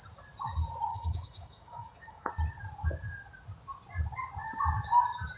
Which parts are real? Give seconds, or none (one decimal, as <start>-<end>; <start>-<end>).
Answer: 0.0-0.9; 2.3-5.4